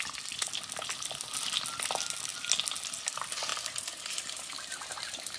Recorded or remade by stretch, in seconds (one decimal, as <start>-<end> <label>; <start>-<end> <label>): 0.0-3.5 recorded; 3.5-4.7 remade; 4.7-5.4 recorded